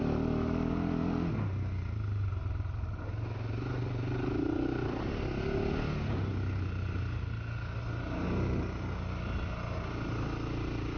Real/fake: real